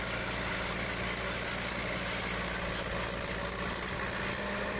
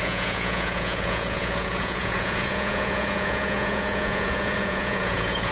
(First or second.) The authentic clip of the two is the first